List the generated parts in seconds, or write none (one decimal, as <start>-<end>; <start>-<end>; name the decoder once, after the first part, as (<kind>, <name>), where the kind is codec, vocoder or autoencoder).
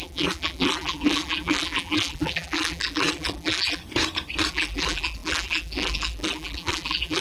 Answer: 0.0-3.8 (vocoder, BigVGAN v2); 4.5-7.2